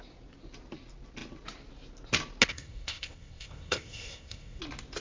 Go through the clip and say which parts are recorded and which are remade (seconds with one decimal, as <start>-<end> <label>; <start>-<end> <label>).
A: 0.0-2.5 recorded; 2.5-4.6 remade; 4.6-5.0 recorded